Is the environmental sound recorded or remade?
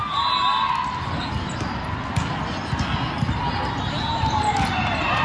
recorded